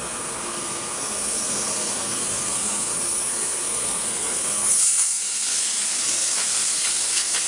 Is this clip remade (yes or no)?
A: yes